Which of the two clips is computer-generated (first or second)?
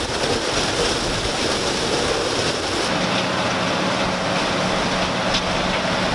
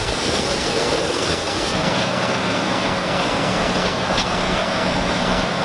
second